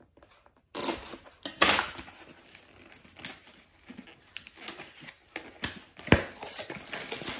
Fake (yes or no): no